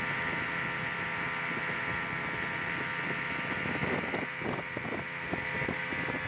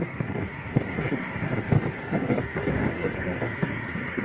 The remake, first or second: second